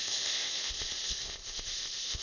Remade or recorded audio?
remade